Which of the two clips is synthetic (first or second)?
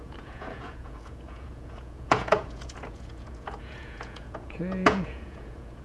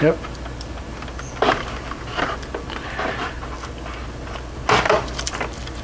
first